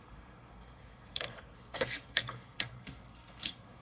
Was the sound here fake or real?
fake